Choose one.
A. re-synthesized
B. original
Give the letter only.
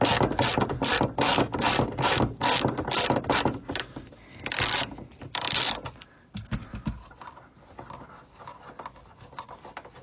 B